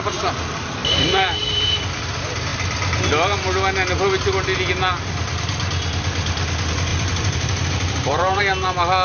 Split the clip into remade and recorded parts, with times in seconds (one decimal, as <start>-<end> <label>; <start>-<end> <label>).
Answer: 0.0-0.8 recorded; 0.8-2.0 remade; 2.0-6.9 recorded; 6.9-8.4 remade; 8.4-9.0 recorded